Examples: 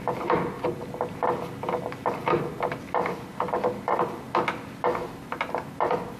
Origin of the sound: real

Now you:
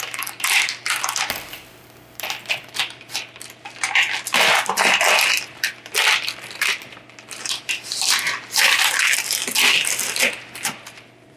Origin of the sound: real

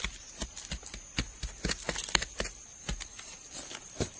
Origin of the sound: real